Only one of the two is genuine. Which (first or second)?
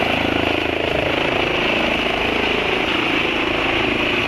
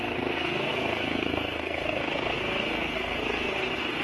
first